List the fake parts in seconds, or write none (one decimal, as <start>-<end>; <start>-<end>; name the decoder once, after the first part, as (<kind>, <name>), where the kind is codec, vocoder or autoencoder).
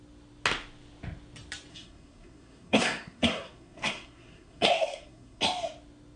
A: 1.7-5.4 (codec, SNAC)